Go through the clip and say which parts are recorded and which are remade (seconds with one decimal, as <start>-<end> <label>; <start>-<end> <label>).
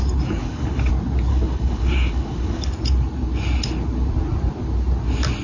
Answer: 0.0-0.4 recorded; 0.4-0.9 remade; 0.9-1.3 recorded; 1.3-2.7 remade; 2.7-5.4 recorded